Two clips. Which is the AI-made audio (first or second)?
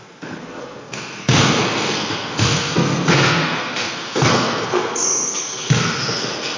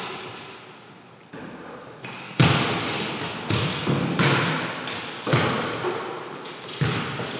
first